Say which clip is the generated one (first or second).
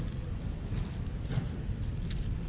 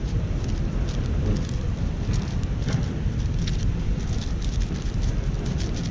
second